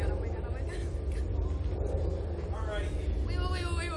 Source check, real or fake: real